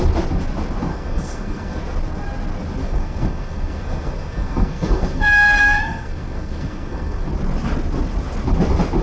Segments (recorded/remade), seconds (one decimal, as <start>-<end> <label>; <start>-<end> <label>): 0.0-0.9 recorded; 0.9-1.8 remade; 1.8-2.8 recorded; 2.8-7.3 remade; 7.3-9.0 recorded